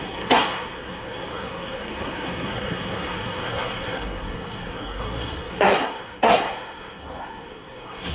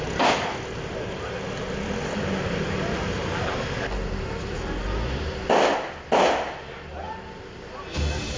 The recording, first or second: second